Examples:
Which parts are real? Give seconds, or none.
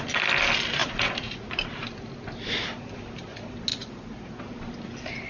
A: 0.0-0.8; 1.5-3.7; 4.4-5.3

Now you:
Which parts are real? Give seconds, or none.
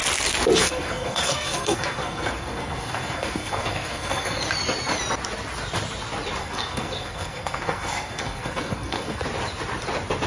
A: 0.0-0.6; 4.4-6.4; 9.2-10.3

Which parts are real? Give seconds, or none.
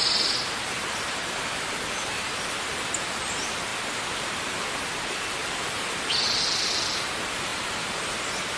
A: 0.0-5.4; 6.4-8.6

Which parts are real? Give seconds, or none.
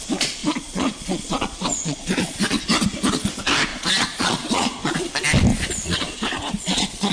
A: 0.0-0.4; 2.6-3.7; 5.1-5.5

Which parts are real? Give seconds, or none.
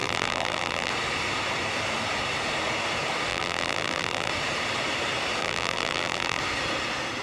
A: 0.9-3.3; 4.3-5.4; 6.4-7.2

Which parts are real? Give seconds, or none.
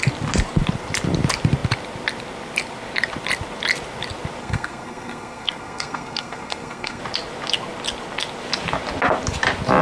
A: 0.0-4.4; 7.0-9.8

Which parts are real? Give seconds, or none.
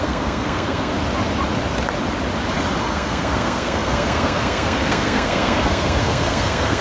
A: 0.9-2.8